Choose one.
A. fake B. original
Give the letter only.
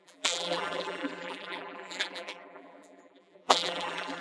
A